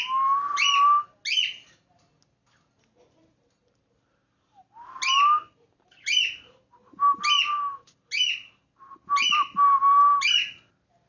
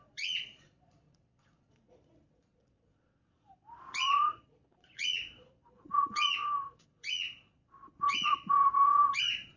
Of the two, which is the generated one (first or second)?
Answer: second